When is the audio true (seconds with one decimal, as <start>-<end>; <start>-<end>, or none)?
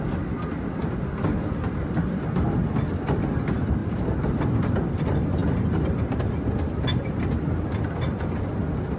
0.0-9.0